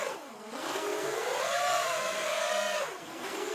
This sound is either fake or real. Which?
fake